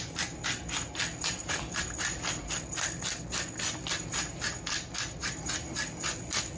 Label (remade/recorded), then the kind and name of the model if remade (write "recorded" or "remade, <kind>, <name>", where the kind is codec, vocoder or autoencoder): recorded